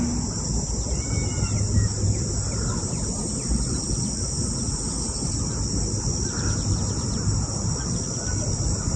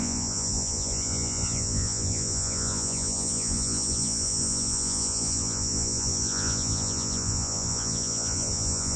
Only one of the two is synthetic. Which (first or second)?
second